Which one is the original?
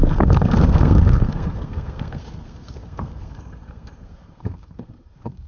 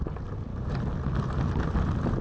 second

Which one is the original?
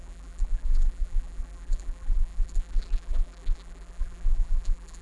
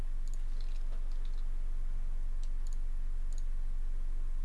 second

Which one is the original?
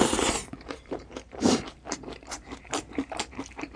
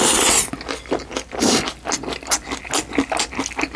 second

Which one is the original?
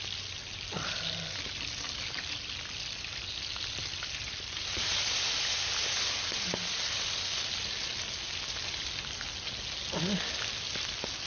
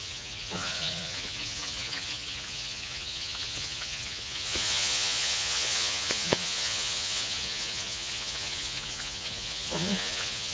first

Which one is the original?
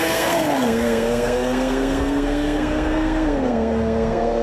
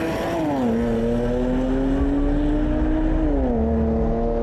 second